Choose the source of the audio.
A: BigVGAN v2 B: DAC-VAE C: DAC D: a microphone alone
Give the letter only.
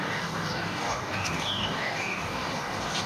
C